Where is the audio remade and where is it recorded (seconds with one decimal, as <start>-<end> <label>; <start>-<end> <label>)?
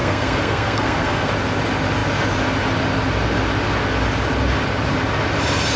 0.0-1.3 remade; 1.3-5.8 recorded